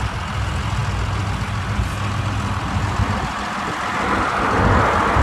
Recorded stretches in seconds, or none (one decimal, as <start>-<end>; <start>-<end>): 0.0-5.2